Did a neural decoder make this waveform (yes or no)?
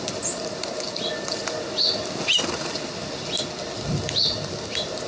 no